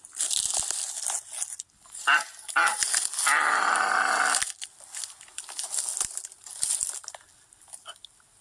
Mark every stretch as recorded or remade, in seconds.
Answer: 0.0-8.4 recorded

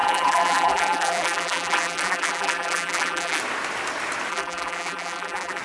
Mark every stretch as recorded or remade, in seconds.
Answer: 0.0-3.4 remade; 3.4-4.3 recorded; 4.3-5.6 remade

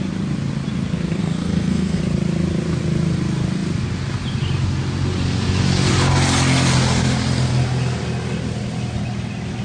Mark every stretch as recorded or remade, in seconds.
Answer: 0.0-1.2 recorded; 1.2-2.0 remade; 2.0-9.6 recorded